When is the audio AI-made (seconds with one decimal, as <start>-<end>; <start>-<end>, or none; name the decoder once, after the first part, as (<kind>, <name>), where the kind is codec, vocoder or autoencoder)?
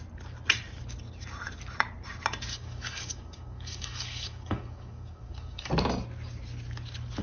2.5-5.7 (codec, DAC)